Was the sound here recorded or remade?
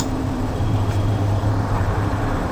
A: remade